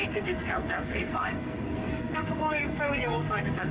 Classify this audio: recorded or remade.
remade